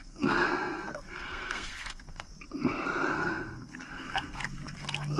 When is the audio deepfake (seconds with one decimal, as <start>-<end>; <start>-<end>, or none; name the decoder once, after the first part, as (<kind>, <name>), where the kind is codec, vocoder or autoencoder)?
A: 0.0-2.3 (codec, SNAC); 3.1-5.2